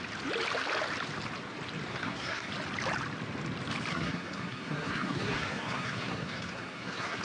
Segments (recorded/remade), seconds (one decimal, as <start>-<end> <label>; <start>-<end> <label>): 0.0-1.9 recorded; 1.9-2.5 remade; 2.5-3.9 recorded; 3.9-7.2 remade